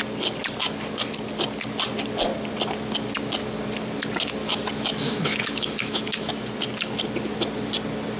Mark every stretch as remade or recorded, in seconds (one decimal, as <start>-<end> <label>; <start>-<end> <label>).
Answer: 0.0-4.4 recorded; 4.4-6.3 remade; 6.3-8.2 recorded